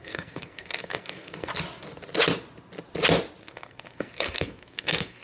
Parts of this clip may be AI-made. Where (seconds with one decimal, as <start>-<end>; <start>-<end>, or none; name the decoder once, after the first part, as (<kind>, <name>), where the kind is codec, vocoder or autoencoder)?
0.0-1.5 (codec, SNAC); 3.4-5.2